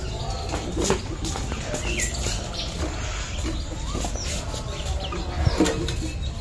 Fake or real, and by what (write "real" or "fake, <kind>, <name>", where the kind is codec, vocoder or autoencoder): real